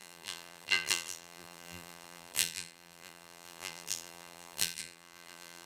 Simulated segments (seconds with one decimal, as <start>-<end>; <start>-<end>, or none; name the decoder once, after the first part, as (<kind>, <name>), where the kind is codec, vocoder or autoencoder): 0.0-5.7 (vocoder, BigVGAN v2)